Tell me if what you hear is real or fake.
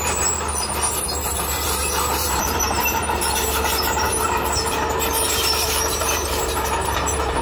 fake